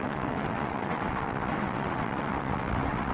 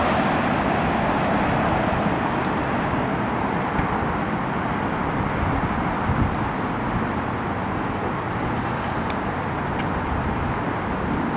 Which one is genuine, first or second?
second